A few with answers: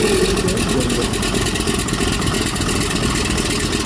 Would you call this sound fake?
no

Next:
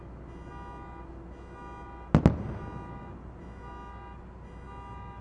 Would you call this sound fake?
no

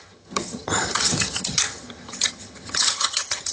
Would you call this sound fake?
yes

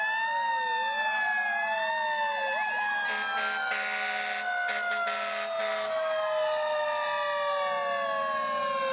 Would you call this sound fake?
no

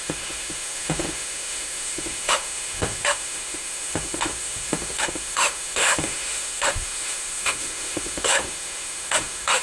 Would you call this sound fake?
yes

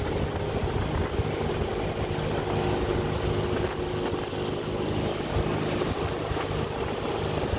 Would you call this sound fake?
no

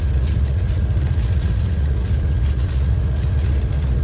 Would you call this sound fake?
yes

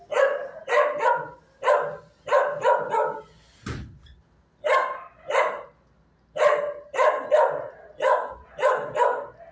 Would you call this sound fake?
no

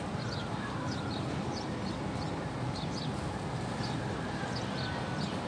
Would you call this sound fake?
no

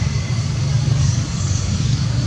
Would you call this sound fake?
yes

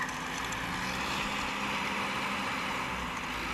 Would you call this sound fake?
no